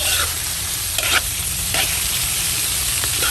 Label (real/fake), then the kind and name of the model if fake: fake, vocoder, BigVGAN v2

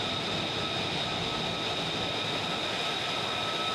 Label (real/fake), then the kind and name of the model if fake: real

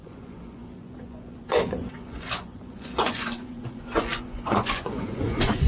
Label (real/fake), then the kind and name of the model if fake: fake, vocoder, Vocos